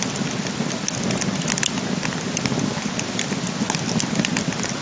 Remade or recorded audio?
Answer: recorded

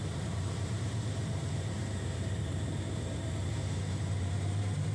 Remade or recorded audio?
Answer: remade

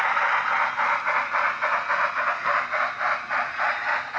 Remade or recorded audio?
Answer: recorded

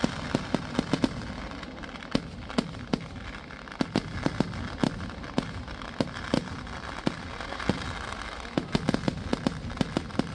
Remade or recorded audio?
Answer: recorded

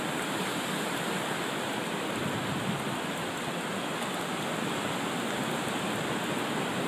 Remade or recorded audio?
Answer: recorded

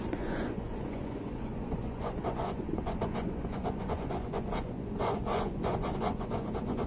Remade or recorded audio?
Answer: remade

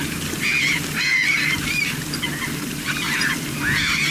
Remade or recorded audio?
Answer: remade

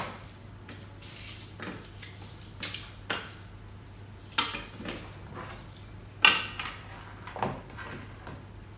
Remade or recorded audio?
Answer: recorded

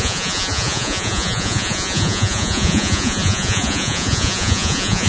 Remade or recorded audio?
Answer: remade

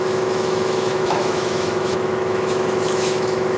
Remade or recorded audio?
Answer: remade